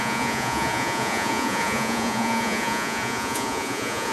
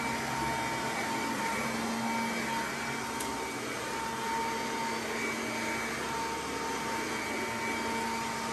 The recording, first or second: second